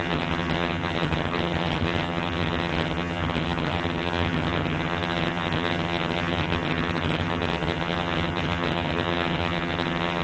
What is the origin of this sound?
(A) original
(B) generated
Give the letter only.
B